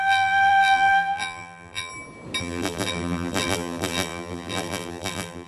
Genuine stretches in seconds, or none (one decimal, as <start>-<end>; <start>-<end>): 1.9-2.4